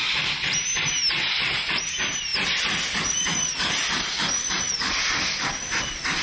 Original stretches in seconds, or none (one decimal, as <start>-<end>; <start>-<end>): 0.0-6.2